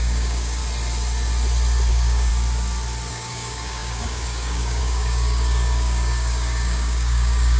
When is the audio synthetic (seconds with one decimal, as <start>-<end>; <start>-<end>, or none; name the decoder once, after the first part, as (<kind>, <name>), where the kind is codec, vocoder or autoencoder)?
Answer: 0.0-0.6 (codec, DAC); 1.9-2.3; 3.1-7.6